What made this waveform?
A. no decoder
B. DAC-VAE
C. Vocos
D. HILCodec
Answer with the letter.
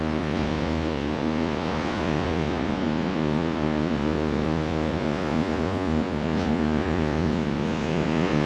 C